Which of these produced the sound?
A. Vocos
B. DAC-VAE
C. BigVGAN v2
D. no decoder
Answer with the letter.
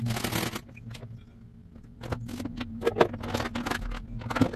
D